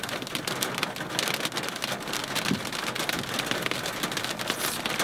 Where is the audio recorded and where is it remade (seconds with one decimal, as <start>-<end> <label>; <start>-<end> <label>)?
0.0-5.0 recorded